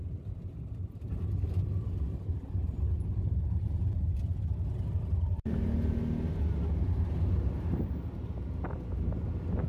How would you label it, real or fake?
real